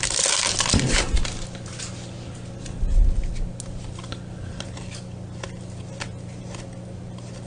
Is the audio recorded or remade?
recorded